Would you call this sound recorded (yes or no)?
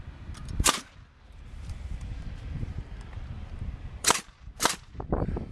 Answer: no